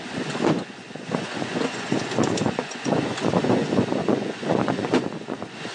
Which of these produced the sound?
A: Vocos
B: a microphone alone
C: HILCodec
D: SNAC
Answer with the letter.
A